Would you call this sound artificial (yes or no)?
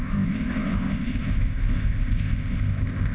yes